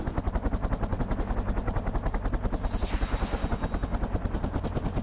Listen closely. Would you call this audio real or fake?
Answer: real